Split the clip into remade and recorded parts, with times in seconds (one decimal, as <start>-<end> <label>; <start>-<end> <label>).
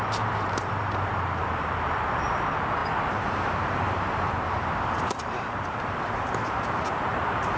0.0-7.6 remade